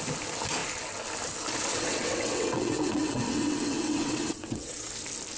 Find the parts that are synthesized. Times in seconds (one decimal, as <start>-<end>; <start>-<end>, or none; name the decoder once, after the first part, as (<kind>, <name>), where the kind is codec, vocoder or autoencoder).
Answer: 1.7-4.9 (vocoder, WaveNeXt)